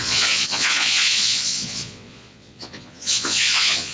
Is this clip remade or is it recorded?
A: remade